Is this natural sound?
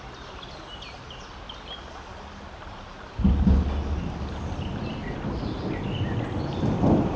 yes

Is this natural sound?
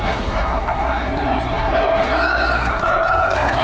no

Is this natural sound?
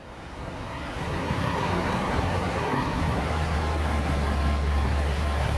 no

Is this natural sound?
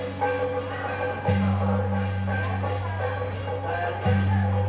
yes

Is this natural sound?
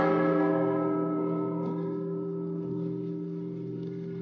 no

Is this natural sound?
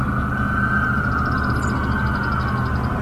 yes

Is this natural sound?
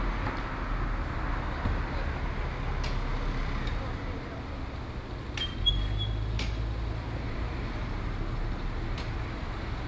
yes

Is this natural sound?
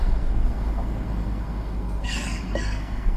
no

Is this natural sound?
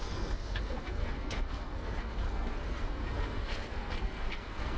no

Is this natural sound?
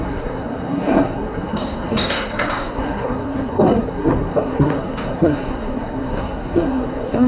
no